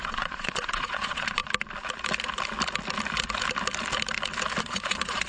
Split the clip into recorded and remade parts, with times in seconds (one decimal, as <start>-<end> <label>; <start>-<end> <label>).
0.0-1.4 remade; 1.4-4.6 recorded; 4.6-5.3 remade

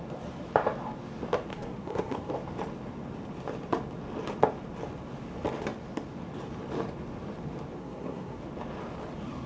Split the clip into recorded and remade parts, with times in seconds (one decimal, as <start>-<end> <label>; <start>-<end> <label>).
0.0-1.5 recorded; 1.5-2.3 remade; 2.3-7.8 recorded; 7.8-8.4 remade; 8.4-9.5 recorded

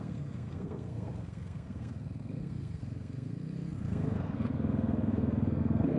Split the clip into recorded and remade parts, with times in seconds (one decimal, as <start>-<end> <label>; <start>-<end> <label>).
0.0-6.0 remade

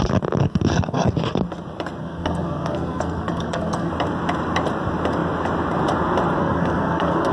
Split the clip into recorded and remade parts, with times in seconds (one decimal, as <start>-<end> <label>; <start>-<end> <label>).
0.0-0.4 recorded; 0.4-1.1 remade; 1.1-2.0 recorded; 2.0-3.9 remade; 3.9-6.4 recorded; 6.4-7.3 remade

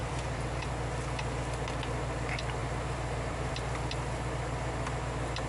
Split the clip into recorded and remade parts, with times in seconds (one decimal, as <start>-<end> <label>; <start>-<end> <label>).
0.0-0.7 remade; 0.7-2.6 recorded; 2.6-3.5 remade; 3.5-5.5 recorded

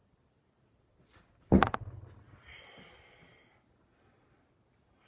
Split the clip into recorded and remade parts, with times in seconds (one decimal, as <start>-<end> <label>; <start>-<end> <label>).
0.0-2.9 remade; 2.9-5.1 recorded

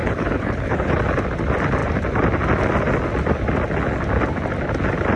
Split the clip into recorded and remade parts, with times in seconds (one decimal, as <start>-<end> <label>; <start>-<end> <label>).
0.0-1.0 remade; 1.0-5.2 recorded